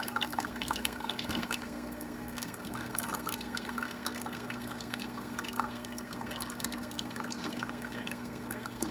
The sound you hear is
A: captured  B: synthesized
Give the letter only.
B